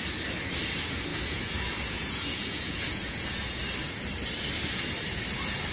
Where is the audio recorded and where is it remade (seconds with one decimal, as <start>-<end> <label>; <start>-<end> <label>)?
0.0-1.1 recorded; 1.1-3.6 remade; 3.6-5.7 recorded